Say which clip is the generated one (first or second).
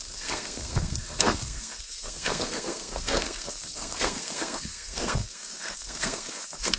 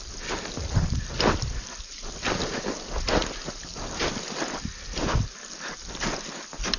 first